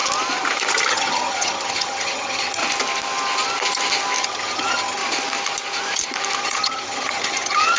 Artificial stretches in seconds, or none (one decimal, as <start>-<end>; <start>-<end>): 0.9-2.6; 4.2-5.0; 6.4-7.8